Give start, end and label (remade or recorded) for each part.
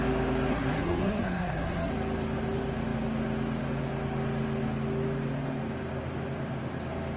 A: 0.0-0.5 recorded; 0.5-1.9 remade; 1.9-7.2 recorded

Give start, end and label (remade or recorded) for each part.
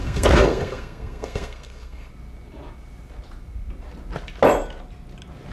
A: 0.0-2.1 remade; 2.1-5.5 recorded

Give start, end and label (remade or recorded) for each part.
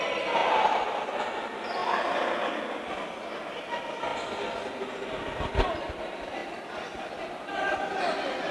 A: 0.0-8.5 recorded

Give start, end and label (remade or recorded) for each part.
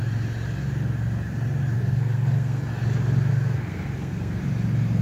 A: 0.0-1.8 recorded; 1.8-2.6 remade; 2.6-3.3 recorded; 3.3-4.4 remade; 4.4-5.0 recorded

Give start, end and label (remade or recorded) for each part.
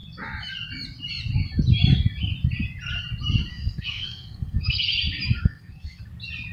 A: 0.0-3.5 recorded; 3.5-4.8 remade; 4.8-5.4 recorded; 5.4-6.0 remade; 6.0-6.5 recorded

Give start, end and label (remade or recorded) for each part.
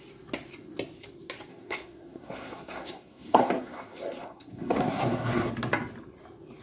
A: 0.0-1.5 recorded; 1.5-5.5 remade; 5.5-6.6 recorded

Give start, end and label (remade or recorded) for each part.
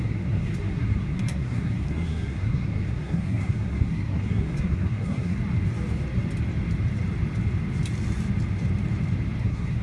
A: 0.0-5.4 remade; 5.4-9.4 recorded; 9.4-9.8 remade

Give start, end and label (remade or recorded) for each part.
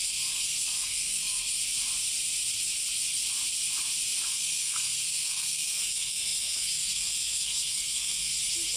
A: 0.0-1.6 remade; 1.6-4.3 recorded; 4.3-8.3 remade; 8.3-8.8 recorded